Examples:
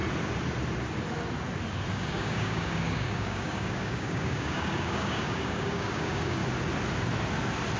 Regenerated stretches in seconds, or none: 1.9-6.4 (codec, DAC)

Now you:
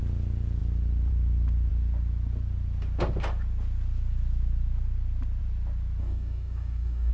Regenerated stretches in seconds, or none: 6.0-7.1 (codec, DAC)

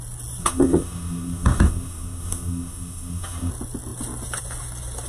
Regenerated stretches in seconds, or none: 0.4-3.5 (codec, DAC)

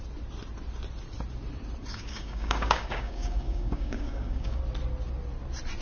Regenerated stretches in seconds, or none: 1.9-4.6 (codec, DAC)